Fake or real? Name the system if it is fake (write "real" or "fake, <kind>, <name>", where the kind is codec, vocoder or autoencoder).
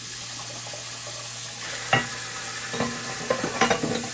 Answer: real